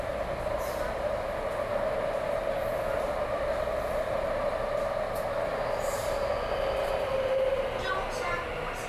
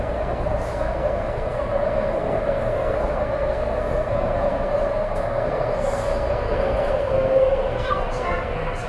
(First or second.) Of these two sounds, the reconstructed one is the second